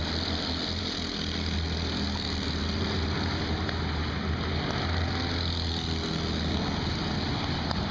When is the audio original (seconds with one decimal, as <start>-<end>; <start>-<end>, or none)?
0.0-7.9